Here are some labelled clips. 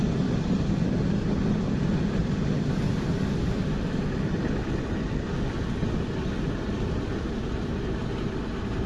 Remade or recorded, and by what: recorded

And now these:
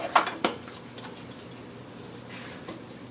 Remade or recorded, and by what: recorded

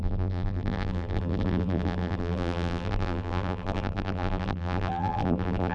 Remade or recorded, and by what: remade, vocoder, BigVGAN v2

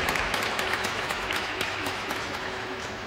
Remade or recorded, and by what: remade, autoencoder, DAC-VAE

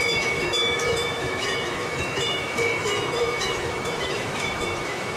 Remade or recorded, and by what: remade, autoencoder, DAC-VAE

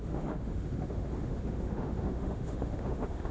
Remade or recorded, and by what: remade, autoencoder, DAC-VAE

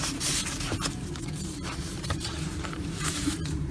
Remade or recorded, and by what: remade, vocoder, BigVGAN v2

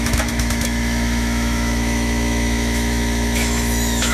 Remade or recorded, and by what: remade, autoencoder, DAC-VAE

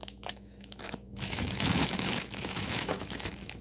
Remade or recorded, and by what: remade, autoencoder, DAC-VAE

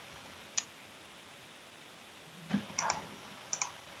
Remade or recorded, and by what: recorded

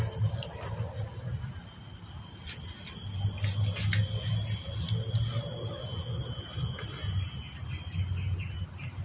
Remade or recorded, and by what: recorded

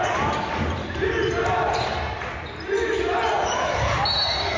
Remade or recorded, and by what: recorded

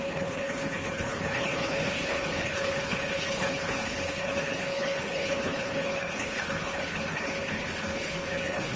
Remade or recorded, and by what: remade, codec, HILCodec